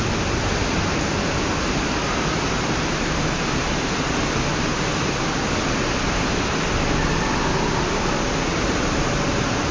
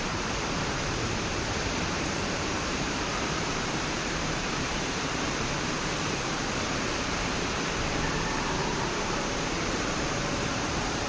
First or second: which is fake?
second